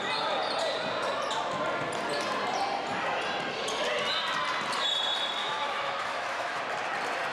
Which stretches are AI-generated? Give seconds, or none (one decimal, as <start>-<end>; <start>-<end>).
5.4-6.6